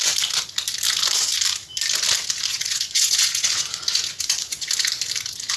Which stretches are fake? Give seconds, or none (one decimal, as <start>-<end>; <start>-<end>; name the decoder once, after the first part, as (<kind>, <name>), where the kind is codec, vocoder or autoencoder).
2.5-4.7 (vocoder, Vocos)